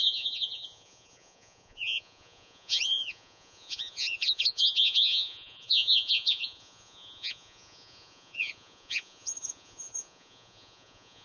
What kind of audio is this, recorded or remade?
remade